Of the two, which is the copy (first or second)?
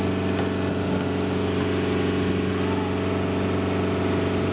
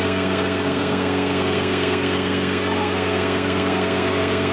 second